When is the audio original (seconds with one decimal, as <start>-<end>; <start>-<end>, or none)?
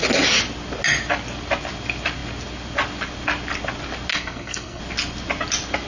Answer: 0.0-4.1; 4.8-5.9